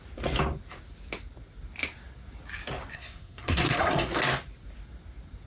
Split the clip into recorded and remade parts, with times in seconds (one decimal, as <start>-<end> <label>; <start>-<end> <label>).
0.0-2.9 recorded; 2.9-4.2 remade; 4.2-5.5 recorded